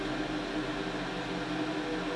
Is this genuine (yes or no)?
yes